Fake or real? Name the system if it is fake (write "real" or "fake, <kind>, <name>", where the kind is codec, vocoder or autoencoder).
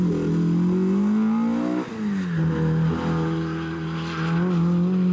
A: real